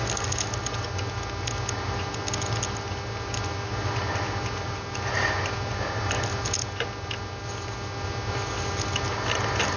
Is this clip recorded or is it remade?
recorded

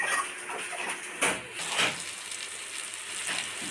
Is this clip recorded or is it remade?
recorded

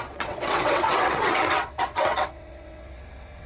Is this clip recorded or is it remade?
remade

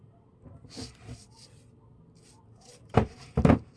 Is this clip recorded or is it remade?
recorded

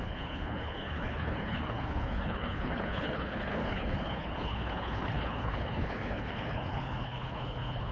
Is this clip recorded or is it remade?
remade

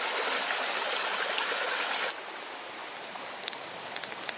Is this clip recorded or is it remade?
recorded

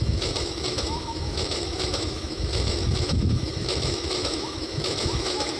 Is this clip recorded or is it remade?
remade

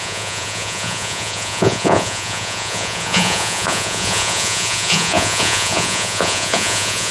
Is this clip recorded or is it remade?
remade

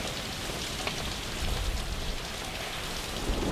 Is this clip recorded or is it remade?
recorded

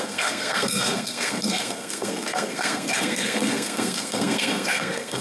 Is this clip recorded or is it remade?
remade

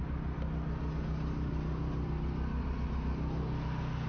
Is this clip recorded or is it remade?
recorded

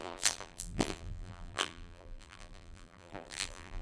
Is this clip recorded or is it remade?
remade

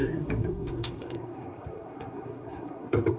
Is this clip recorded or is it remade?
remade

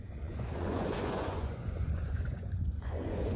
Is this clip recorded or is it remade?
remade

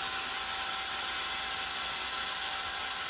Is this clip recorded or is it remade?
recorded